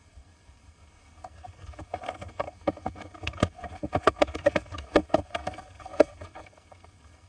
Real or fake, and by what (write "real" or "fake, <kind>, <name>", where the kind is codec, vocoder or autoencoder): fake, codec, SNAC